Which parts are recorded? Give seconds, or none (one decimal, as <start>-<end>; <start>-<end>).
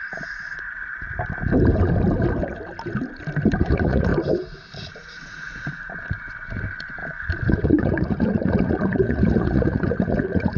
0.9-3.6; 4.1-4.7; 7.0-7.5